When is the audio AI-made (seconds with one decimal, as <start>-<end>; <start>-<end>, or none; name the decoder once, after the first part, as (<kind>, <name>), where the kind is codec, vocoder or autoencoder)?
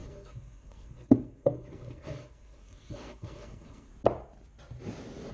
0.0-3.9 (codec, SNAC)